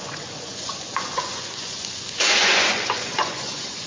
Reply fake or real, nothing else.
fake